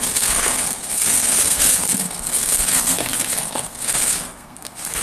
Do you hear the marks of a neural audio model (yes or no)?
yes